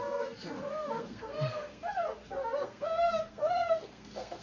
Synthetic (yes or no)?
yes